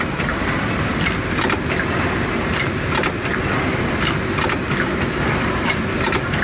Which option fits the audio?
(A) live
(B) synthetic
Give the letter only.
A